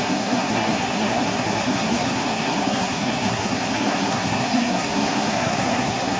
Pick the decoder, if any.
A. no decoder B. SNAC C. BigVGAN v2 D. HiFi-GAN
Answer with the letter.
B